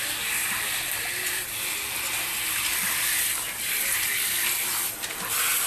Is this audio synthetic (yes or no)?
no